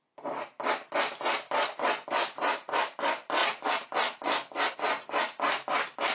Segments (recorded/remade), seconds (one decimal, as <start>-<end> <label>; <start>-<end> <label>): 0.0-6.1 recorded